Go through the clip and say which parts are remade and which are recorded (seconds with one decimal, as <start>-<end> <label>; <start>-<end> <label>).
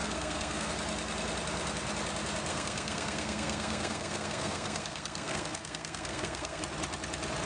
0.0-0.7 remade; 0.7-2.5 recorded; 2.5-6.6 remade; 6.6-7.5 recorded